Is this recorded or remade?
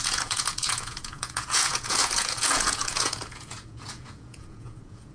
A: remade